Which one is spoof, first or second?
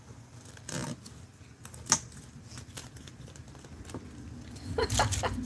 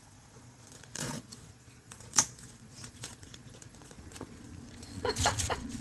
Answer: second